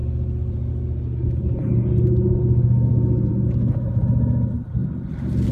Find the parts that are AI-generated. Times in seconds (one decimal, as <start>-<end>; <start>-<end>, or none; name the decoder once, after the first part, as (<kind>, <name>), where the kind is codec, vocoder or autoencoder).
0.0-0.7 (vocoder, BigVGAN v2); 4.8-5.5

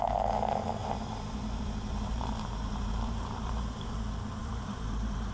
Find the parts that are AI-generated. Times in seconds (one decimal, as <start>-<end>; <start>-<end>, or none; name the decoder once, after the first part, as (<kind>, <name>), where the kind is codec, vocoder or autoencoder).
0.8-4.0 (vocoder, BigVGAN v2); 4.4-5.3

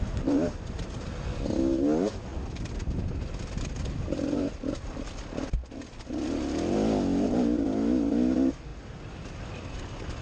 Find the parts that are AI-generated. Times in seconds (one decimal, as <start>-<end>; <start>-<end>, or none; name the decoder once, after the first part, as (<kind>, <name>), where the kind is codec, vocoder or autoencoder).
none

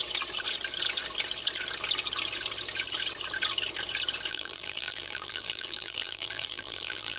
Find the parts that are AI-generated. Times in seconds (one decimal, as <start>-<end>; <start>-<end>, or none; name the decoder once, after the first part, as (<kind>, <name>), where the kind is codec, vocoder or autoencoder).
4.3-7.2 (vocoder, BigVGAN v2)

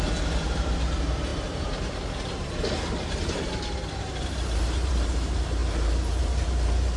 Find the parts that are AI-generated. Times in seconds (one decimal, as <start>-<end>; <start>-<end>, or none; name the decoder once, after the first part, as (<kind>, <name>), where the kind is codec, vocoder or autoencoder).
0.0-7.0 (vocoder, BigVGAN v2)

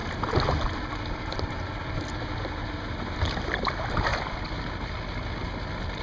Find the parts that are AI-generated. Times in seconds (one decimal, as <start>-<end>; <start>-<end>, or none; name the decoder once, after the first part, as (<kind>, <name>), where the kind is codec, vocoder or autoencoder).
3.6-6.0 (vocoder, BigVGAN v2)

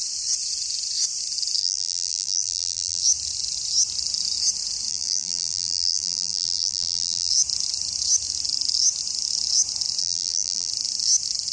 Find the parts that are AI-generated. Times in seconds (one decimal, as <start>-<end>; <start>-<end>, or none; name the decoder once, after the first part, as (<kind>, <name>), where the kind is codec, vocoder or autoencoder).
1.6-3.0 (vocoder, BigVGAN v2); 4.9-7.3; 10.0-10.7